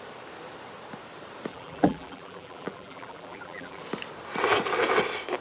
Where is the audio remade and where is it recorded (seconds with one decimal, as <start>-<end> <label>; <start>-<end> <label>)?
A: 0.0-1.5 recorded; 1.5-3.8 remade; 3.8-5.4 recorded